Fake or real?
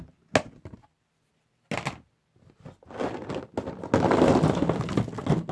real